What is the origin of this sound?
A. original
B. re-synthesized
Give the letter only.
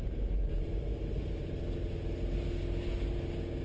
A